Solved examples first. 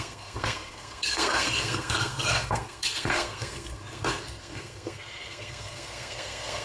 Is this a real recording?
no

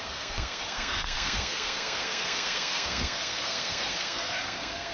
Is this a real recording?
no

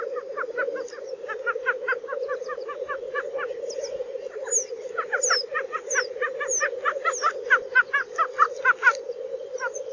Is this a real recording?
yes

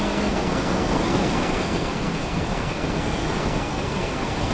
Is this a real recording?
no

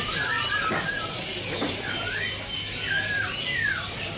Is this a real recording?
yes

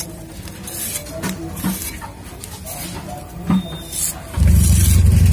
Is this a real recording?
yes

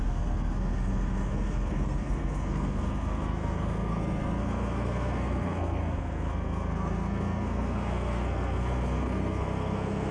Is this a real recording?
no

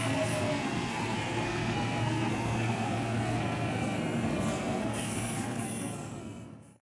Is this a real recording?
no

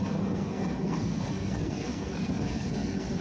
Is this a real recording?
no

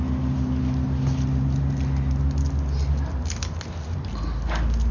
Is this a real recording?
yes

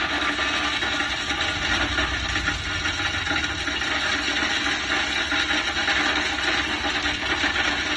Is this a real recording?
yes